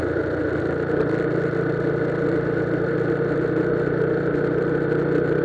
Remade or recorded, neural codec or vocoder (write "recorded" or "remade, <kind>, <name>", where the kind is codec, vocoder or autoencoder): recorded